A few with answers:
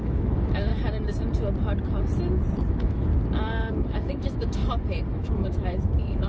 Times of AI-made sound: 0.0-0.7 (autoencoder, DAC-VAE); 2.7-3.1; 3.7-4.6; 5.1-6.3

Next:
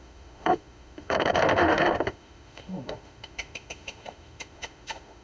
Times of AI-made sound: 0.0-5.2 (autoencoder, DAC-VAE)

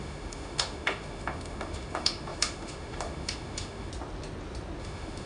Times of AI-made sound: 0.0-3.9 (autoencoder, DAC-VAE); 4.8-5.3

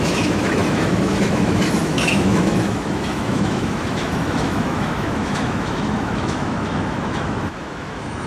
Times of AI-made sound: 0.0-8.3 (autoencoder, DAC-VAE)

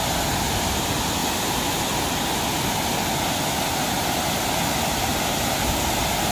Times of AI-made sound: none